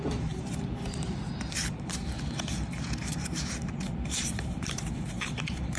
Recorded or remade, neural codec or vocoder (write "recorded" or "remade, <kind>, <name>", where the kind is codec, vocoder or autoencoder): remade, vocoder, BigVGAN v2